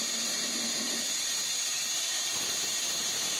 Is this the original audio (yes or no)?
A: yes